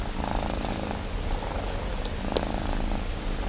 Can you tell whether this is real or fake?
real